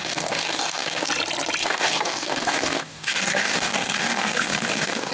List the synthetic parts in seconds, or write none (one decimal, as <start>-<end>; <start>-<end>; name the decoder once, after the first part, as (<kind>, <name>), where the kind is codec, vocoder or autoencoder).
0.0-1.1 (codec, DAC); 1.6-5.1